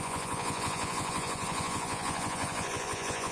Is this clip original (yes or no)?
no